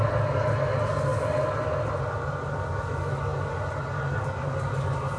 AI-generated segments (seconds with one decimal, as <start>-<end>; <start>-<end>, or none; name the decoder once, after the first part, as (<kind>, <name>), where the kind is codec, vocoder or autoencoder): none